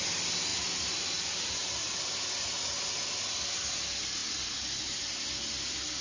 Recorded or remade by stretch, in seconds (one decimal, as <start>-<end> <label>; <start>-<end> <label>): 0.0-6.0 recorded